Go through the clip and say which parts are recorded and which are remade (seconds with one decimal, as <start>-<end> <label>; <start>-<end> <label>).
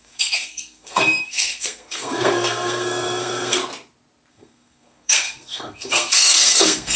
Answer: 0.0-3.6 remade; 3.6-4.3 recorded; 4.3-7.0 remade